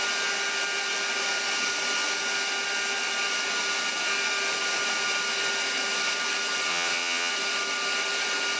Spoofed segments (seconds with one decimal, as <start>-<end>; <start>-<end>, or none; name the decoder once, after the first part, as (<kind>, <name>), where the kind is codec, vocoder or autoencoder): 6.7-7.3 (vocoder, WaveNeXt)